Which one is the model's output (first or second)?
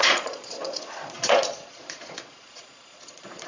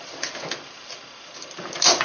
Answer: first